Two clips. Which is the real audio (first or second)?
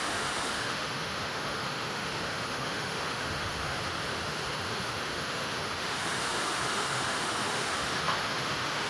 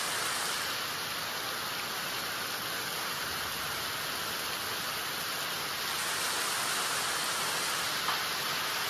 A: second